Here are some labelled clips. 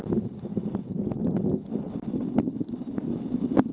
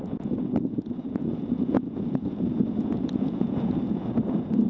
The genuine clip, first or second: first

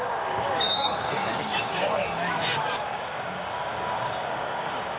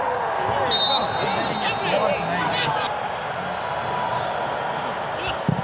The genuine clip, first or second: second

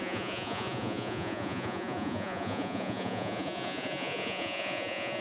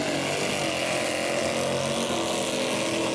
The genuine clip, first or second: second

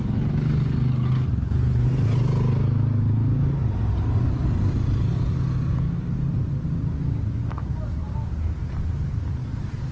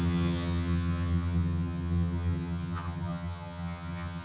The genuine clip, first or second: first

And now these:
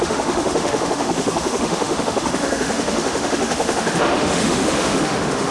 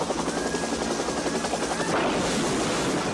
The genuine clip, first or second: second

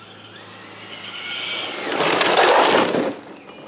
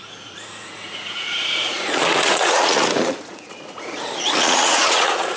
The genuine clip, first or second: first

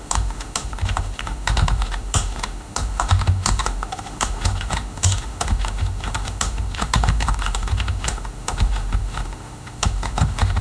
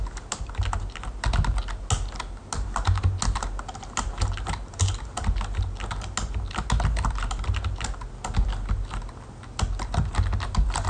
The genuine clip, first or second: second